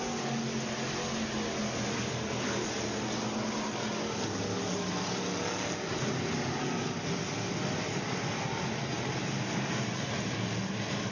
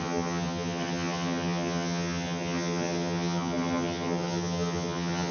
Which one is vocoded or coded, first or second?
second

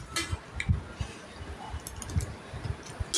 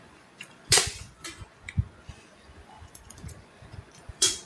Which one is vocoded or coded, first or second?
second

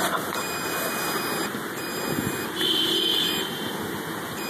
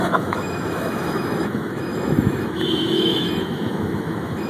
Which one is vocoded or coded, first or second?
second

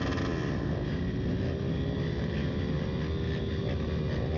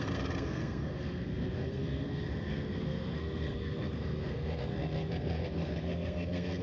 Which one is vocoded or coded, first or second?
second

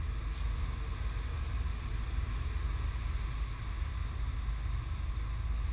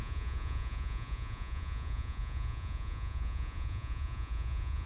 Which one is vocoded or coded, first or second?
second